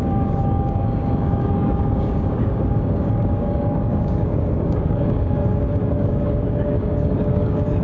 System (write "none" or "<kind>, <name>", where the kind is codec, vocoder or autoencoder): codec, DAC